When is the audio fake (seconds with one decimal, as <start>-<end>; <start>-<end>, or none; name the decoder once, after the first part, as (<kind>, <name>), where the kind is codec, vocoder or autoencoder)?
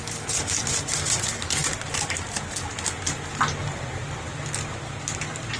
none